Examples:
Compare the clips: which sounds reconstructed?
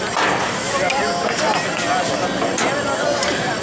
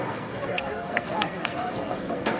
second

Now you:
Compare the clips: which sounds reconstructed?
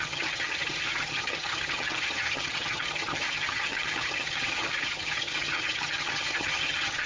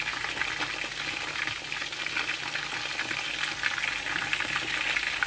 first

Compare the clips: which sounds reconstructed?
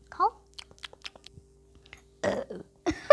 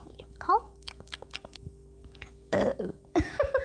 second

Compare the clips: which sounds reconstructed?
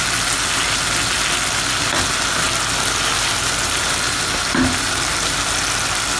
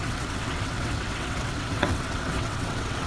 second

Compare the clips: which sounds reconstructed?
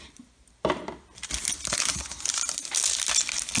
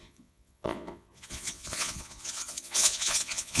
second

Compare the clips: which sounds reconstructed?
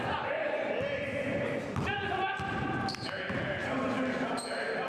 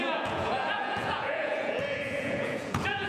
second